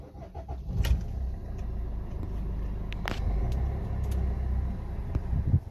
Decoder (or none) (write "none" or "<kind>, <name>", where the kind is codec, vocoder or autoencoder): none